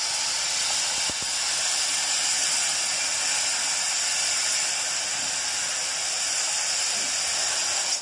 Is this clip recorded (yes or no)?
yes